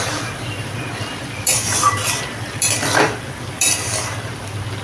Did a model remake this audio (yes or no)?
yes